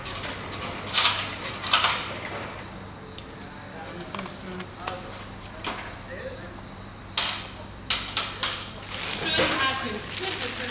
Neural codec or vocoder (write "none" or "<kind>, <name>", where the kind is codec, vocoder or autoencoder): none